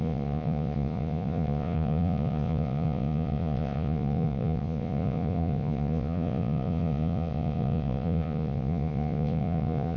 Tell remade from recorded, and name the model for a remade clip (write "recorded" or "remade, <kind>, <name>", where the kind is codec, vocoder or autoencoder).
remade, vocoder, Vocos